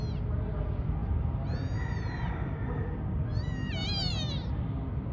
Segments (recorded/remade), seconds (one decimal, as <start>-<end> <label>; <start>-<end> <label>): 0.0-5.1 recorded

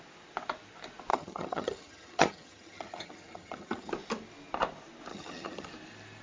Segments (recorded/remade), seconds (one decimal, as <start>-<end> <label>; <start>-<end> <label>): 0.0-1.1 recorded; 1.1-3.9 remade; 3.9-5.1 recorded; 5.1-5.7 remade; 5.7-6.2 recorded

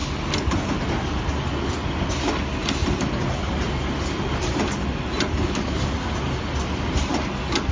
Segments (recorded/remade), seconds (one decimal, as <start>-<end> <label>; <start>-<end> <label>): 0.0-7.7 recorded

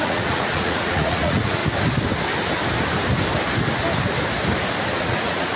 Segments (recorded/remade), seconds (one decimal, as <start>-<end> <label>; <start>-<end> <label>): 0.0-1.6 remade; 1.6-5.0 recorded; 5.0-5.6 remade

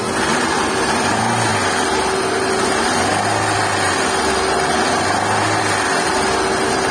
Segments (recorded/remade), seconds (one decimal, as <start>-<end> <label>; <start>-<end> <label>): 0.0-6.9 recorded

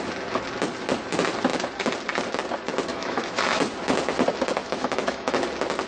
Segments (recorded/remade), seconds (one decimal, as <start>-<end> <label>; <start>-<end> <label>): 0.0-2.9 recorded; 2.9-3.6 remade; 3.6-4.6 recorded; 4.6-5.4 remade; 5.4-5.9 recorded

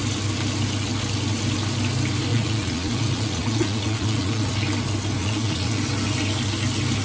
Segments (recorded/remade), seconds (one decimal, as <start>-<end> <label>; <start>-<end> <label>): 0.0-2.3 recorded; 2.3-4.5 remade; 4.5-5.2 recorded; 5.2-5.8 remade; 5.8-7.0 recorded